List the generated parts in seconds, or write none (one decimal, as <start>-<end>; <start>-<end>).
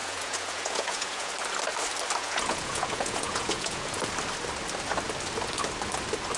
0.0-1.3; 2.2-4.0